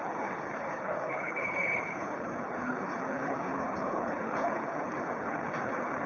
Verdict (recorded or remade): remade